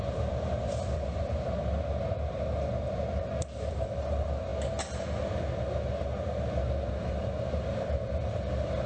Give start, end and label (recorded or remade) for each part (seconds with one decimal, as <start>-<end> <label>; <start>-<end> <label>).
0.0-4.5 remade; 4.5-6.9 recorded; 6.9-8.9 remade